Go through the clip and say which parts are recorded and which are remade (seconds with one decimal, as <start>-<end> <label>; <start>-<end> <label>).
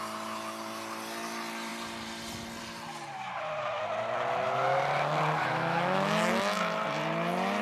0.0-5.4 recorded; 5.4-6.3 remade; 6.3-7.6 recorded